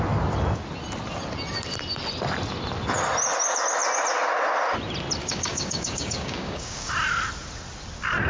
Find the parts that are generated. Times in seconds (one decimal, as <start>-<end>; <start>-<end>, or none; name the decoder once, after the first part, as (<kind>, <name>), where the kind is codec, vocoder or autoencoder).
5.2-6.9 (codec, DAC)